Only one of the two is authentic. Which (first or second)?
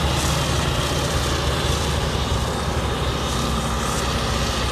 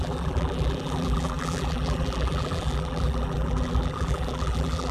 first